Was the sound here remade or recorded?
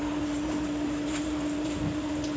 remade